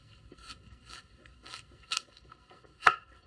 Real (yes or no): no